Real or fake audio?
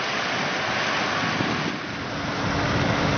real